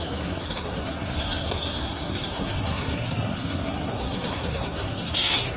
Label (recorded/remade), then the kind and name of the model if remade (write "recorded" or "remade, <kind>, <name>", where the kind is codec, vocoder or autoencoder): remade, codec, SNAC